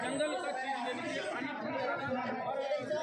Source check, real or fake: real